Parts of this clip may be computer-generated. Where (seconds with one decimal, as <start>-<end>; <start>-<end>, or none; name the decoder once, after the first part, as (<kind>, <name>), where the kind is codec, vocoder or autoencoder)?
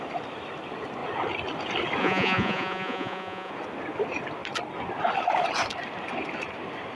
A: 2.0-3.5 (vocoder, Vocos)